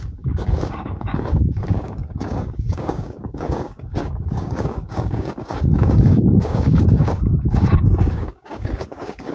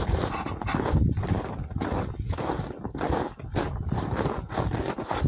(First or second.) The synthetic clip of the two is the first